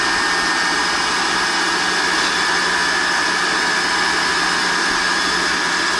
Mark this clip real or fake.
real